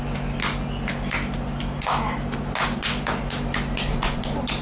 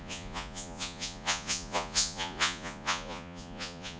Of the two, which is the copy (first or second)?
second